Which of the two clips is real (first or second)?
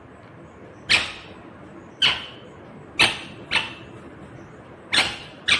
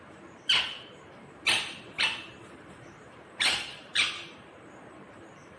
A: first